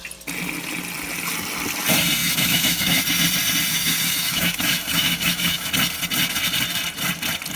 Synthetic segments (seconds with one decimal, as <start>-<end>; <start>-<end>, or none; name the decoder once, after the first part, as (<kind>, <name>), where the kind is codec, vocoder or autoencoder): 2.2-3.0 (autoencoder, DAC-VAE); 3.7-5.7